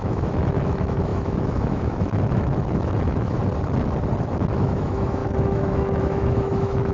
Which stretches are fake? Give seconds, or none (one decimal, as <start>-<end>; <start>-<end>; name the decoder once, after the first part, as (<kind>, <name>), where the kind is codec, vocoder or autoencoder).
0.0-3.4 (autoencoder, DAC-VAE); 4.3-6.9